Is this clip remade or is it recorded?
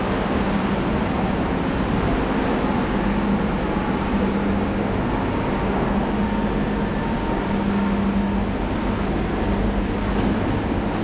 recorded